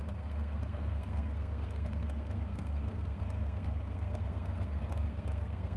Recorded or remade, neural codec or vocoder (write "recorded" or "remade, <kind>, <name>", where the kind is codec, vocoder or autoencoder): remade, codec, SNAC